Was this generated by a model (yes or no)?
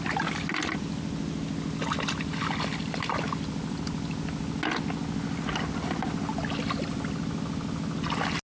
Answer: no